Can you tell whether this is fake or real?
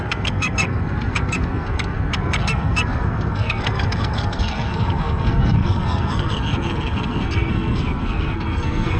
fake